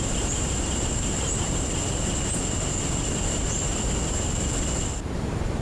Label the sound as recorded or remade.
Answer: recorded